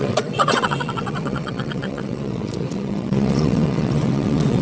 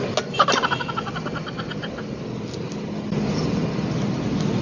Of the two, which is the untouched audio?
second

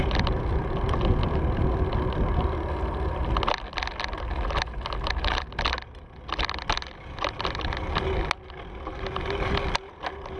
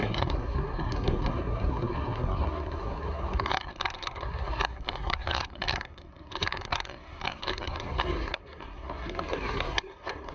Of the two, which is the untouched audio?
first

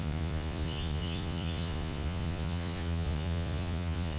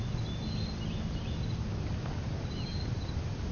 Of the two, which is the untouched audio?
second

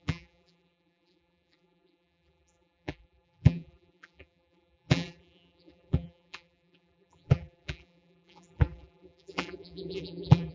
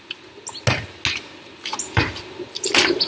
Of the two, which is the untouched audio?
second